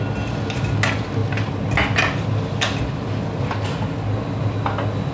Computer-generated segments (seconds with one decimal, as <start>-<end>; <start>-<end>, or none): none